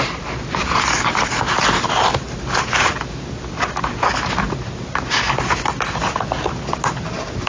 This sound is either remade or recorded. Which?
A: recorded